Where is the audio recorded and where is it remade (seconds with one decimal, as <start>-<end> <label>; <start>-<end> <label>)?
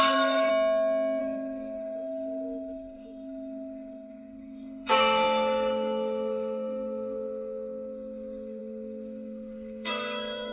0.0-0.5 remade; 0.5-1.2 recorded; 1.2-10.5 remade